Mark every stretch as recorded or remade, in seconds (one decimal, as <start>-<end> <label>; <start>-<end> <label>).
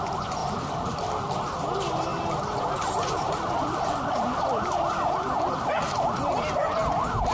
0.0-0.4 recorded; 0.4-1.2 remade; 1.2-2.1 recorded; 2.1-6.2 remade; 6.2-7.3 recorded